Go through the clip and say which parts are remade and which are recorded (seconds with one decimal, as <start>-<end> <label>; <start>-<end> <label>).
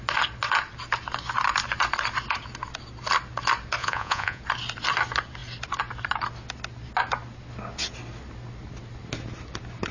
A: 0.0-3.8 recorded; 3.8-4.4 remade; 4.4-9.9 recorded